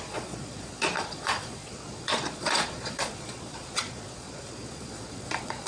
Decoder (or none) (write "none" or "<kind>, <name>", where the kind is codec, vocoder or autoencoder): vocoder, Vocos